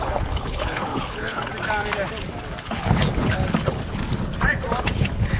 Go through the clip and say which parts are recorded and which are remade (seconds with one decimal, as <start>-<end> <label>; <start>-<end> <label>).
0.0-1.5 remade; 1.5-2.6 recorded; 2.6-3.8 remade; 3.8-4.8 recorded; 4.8-5.4 remade